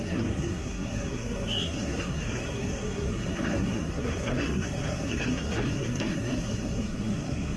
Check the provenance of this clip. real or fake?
fake